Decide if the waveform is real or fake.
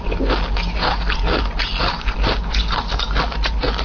real